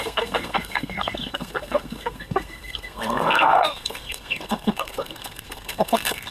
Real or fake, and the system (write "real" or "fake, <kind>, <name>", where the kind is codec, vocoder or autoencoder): fake, codec, SNAC